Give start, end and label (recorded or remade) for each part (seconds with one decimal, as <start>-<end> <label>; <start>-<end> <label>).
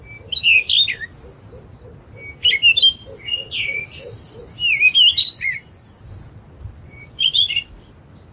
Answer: 0.0-5.3 recorded; 5.3-6.1 remade; 6.1-6.8 recorded; 6.8-7.7 remade; 7.7-8.3 recorded